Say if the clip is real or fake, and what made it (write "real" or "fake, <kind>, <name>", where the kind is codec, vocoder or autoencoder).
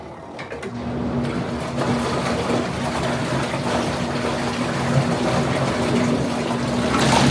real